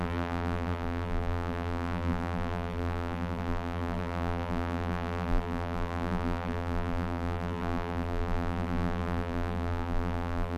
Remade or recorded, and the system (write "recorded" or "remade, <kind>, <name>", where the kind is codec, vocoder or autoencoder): remade, vocoder, BigVGAN v2